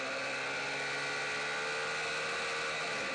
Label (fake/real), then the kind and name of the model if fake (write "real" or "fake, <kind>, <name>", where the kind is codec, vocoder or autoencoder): real